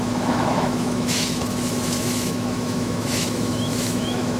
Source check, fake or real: fake